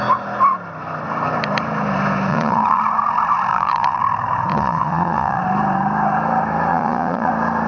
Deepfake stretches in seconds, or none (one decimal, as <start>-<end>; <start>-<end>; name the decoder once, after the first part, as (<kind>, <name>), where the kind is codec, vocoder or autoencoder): 2.3-2.8 (vocoder, Vocos); 3.5-4.0; 4.5-5.4; 6.7-7.3